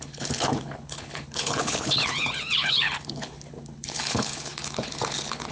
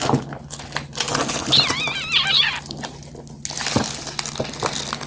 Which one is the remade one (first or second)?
first